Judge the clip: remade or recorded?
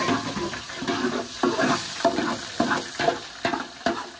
recorded